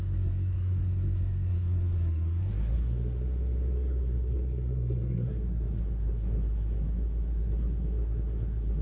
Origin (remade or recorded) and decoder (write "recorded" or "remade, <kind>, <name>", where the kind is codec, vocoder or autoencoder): remade, codec, SNAC